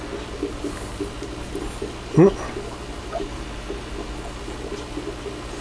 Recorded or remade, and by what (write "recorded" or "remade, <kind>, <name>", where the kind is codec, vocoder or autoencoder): recorded